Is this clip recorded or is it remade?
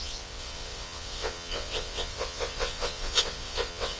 remade